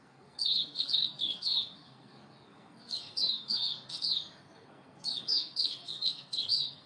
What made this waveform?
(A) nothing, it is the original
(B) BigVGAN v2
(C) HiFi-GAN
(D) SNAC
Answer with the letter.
D